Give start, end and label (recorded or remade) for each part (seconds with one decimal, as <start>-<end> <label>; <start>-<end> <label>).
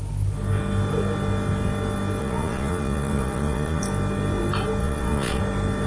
0.0-2.2 recorded; 2.2-3.8 remade; 3.8-4.8 recorded; 4.8-5.4 remade; 5.4-5.9 recorded